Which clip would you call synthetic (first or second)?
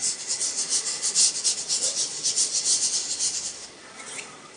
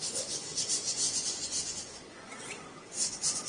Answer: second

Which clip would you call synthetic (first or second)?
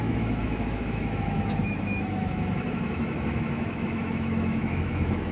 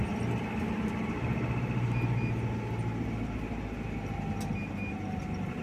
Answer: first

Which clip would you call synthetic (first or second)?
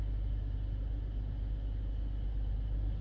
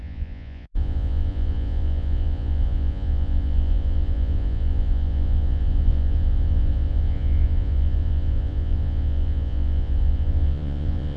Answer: second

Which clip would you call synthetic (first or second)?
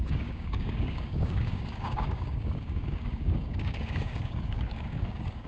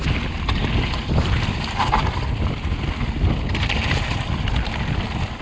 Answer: first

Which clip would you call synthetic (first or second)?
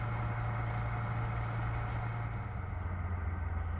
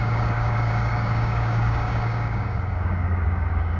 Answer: second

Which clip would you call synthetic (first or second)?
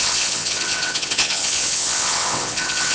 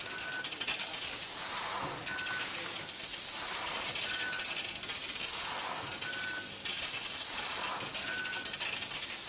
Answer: first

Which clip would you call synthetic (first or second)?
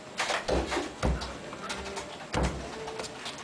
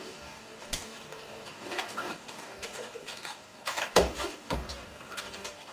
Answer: second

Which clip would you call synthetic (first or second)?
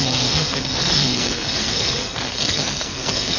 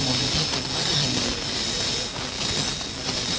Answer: first